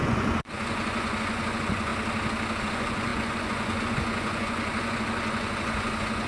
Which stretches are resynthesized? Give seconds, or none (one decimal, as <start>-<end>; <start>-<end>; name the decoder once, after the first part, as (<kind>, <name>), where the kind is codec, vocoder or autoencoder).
0.0-1.9 (vocoder, Vocos); 2.6-6.3